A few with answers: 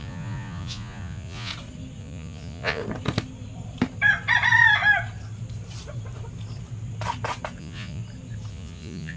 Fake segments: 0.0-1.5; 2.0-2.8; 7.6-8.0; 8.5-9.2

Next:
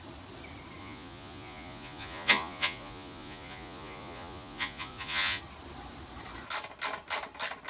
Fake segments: 0.8-5.4

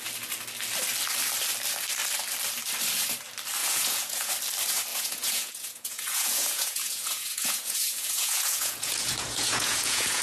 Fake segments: 3.6-4.3; 4.9-10.2

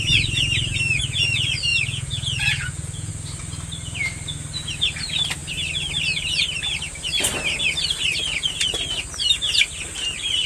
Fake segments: 1.7-3.1